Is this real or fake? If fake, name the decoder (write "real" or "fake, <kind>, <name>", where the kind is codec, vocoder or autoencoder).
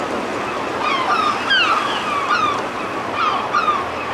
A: real